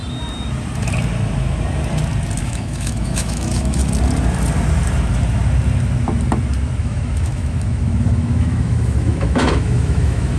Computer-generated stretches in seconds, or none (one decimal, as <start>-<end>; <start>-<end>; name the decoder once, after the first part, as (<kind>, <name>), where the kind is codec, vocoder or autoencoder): 2.4-3.8 (autoencoder, DAC-VAE); 6.8-10.4